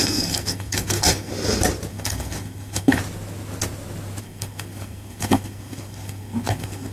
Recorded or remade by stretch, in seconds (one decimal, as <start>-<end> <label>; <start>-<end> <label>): 0.0-1.3 remade; 1.3-1.9 recorded; 1.9-3.0 remade; 3.0-4.2 recorded; 4.2-6.9 remade